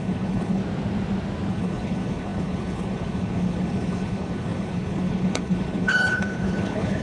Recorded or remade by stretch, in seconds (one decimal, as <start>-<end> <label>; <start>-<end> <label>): 0.0-0.6 remade; 0.6-1.5 recorded; 1.5-7.0 remade